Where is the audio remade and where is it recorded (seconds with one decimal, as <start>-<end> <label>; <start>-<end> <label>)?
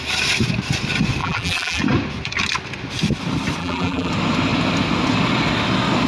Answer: 0.0-1.2 recorded; 1.2-1.8 remade; 1.8-3.6 recorded; 3.6-4.1 remade; 4.1-6.1 recorded